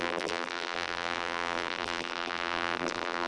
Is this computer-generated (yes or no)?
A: yes